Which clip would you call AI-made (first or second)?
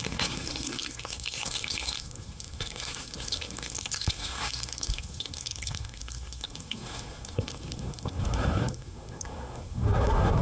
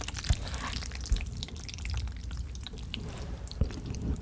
first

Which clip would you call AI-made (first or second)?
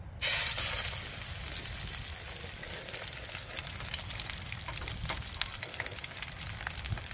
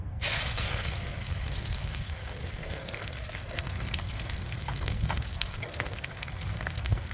second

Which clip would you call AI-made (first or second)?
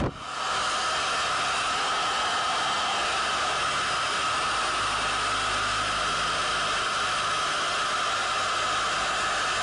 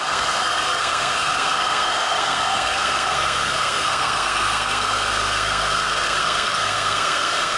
second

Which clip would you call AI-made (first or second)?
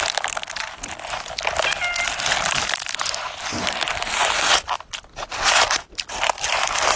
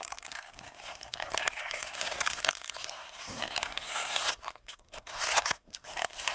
second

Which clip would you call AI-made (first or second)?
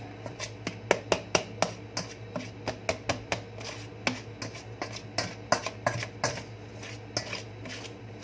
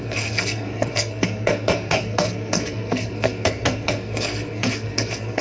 second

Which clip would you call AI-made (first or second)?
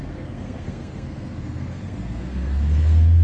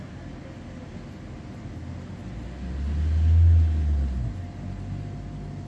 first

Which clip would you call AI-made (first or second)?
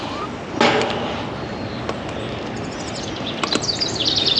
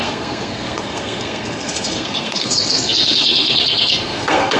second